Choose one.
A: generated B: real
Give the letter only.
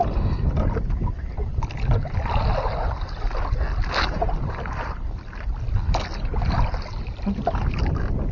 B